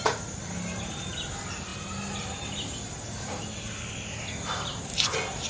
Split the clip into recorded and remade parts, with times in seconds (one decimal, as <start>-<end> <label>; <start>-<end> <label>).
0.0-5.5 recorded